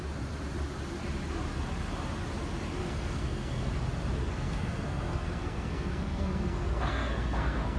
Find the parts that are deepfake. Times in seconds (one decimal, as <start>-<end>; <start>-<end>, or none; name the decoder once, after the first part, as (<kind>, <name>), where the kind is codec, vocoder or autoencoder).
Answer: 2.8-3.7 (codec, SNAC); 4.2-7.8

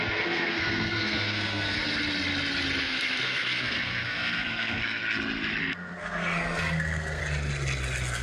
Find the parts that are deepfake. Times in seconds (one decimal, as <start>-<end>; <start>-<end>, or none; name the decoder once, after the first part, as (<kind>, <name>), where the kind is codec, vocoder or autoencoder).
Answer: 0.0-1.8 (codec, SNAC); 2.8-5.0; 5.6-7.2

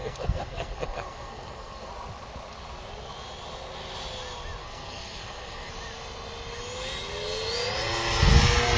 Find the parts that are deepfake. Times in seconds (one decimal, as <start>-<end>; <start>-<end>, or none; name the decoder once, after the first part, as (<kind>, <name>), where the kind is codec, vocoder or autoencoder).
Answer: 0.0-1.9 (codec, SNAC); 4.6-5.7

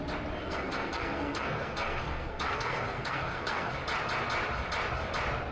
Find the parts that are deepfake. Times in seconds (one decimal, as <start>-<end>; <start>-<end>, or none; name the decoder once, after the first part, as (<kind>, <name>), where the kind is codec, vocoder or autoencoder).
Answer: 0.4-3.7 (codec, SNAC)

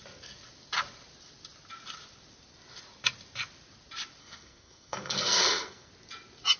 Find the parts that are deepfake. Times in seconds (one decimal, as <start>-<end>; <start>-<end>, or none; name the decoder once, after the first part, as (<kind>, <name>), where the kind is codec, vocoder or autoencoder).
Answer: 4.2-5.9 (codec, SNAC)

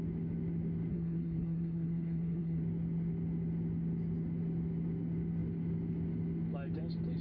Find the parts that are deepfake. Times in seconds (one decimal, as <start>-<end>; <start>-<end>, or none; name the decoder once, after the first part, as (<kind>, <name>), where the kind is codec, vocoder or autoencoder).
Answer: 0.9-2.6 (codec, SNAC)